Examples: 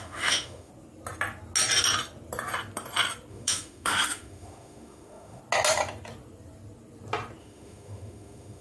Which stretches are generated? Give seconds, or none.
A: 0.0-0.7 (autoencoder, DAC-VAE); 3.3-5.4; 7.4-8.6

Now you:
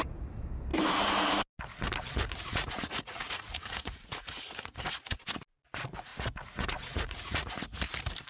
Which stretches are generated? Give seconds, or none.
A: 2.5-5.2 (vocoder, Vocos); 6.1-7.8